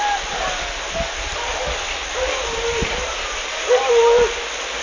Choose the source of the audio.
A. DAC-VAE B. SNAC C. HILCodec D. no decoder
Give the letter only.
D